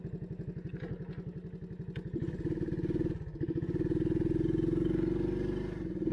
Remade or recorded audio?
recorded